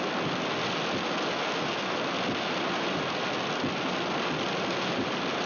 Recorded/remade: recorded